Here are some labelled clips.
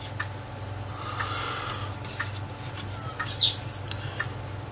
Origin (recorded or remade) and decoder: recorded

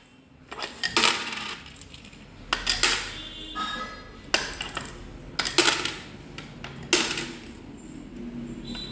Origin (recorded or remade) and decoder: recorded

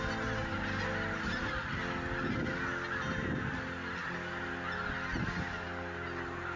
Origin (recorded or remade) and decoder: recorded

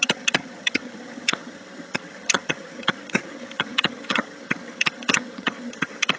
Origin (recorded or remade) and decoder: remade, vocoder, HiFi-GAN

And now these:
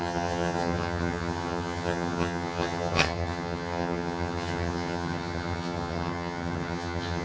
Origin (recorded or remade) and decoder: remade, vocoder, HiFi-GAN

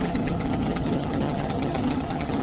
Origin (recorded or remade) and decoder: remade, vocoder, HiFi-GAN